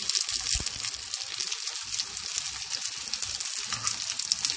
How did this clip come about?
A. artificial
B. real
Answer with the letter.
B